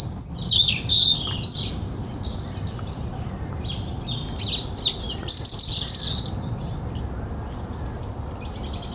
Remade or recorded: recorded